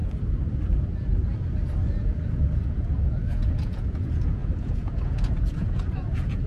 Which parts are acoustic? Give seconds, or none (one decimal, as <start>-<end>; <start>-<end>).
0.0-2.0

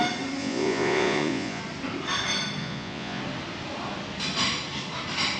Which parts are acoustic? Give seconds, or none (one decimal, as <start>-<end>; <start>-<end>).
0.0-0.4; 1.6-2.6; 3.2-5.4

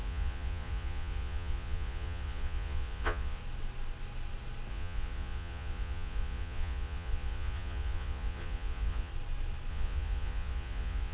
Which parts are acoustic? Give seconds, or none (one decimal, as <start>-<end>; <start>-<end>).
3.4-4.7; 9.1-9.7